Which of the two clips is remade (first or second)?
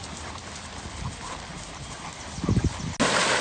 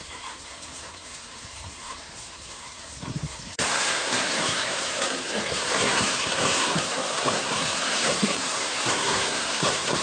second